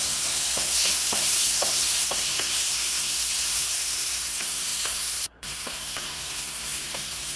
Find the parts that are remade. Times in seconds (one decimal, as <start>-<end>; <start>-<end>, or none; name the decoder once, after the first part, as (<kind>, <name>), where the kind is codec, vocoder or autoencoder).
0.0-7.4 (codec, SNAC)